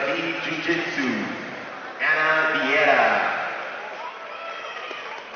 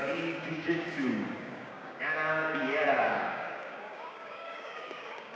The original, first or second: first